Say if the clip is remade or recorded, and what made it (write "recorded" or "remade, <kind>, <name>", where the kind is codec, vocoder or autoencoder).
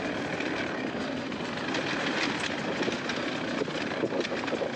recorded